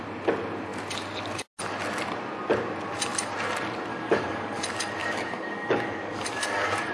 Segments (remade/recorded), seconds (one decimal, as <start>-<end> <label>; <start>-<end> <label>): 0.0-3.9 recorded; 3.9-4.6 remade; 4.6-5.0 recorded; 5.0-6.9 remade